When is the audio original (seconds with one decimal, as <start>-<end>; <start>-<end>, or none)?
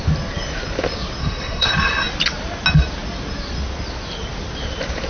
0.0-1.2; 1.7-5.1